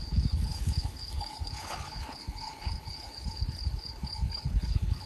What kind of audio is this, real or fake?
fake